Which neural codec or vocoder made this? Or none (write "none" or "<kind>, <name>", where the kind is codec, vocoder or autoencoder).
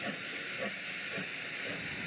none